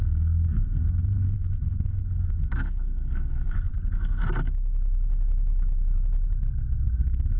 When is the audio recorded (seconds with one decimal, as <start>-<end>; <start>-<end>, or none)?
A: 3.7-6.7